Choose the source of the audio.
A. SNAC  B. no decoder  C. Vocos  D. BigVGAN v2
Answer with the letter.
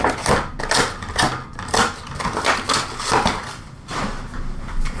B